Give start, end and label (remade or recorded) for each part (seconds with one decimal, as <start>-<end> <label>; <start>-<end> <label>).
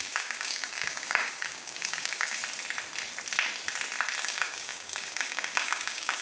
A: 0.0-2.4 remade; 2.4-4.2 recorded; 4.2-6.2 remade